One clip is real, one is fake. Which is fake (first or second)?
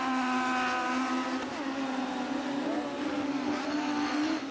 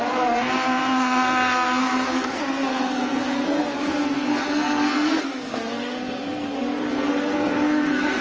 second